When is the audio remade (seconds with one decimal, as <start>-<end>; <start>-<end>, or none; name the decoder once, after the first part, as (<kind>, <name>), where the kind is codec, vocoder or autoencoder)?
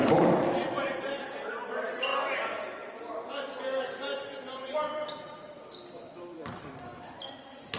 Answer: 0.0-1.3 (vocoder, BigVGAN v2); 4.1-7.2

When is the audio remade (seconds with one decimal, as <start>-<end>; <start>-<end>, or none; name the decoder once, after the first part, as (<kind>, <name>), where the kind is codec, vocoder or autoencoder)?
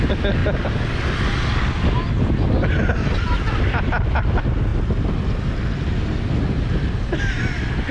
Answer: none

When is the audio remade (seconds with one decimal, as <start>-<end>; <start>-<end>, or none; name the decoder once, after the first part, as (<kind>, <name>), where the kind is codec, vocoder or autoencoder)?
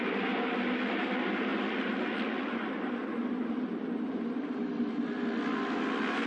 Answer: none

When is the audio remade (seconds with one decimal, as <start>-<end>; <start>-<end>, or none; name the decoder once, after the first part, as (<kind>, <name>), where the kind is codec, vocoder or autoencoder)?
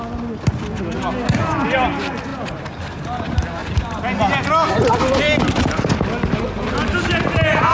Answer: none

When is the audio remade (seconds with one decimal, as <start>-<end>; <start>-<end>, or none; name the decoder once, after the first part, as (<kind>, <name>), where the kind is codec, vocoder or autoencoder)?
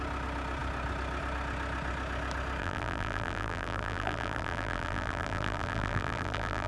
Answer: 2.6-6.7 (vocoder, BigVGAN v2)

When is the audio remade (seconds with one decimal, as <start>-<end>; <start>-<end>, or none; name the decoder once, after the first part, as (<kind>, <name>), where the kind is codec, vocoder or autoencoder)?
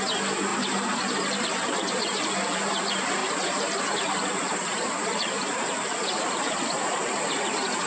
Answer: 0.5-2.8 (vocoder, BigVGAN v2); 3.2-3.8; 4.7-6.6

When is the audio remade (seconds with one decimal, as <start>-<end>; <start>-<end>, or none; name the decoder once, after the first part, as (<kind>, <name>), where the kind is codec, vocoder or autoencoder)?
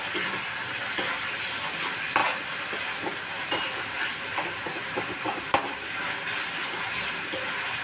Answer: 2.2-6.5 (vocoder, BigVGAN v2)